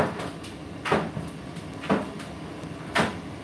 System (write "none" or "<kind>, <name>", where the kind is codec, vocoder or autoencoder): none